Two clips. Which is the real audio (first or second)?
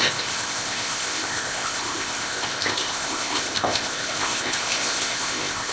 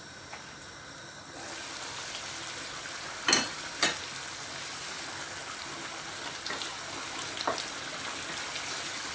second